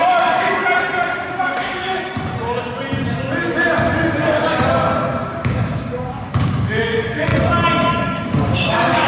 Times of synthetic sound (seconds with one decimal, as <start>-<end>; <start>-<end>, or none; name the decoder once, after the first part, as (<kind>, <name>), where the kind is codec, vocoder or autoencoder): 0.0-0.6 (codec, DAC); 1.3-2.1; 5.3-7.3; 7.9-9.1